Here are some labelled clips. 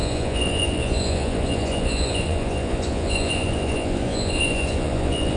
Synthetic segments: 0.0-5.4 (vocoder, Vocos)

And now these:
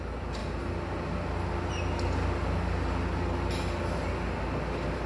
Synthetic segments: none

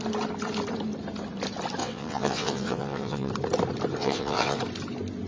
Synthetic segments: 1.8-3.3 (vocoder, WaveNeXt); 4.0-4.6

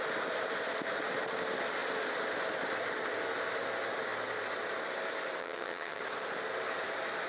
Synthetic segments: 5.4-6.0 (vocoder, HiFi-GAN)

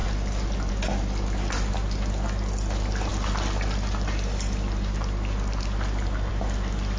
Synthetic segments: none

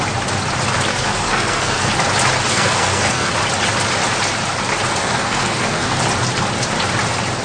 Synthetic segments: 0.9-1.9 (codec, SNAC); 2.5-3.3; 5.0-6.0

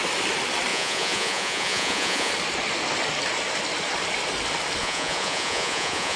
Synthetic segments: 0.7-2.3 (vocoder, Vocos); 4.8-6.2

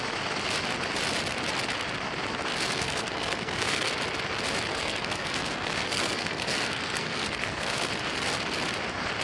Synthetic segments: 2.5-3.9 (codec, SNAC); 4.7-7.9